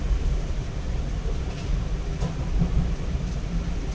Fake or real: real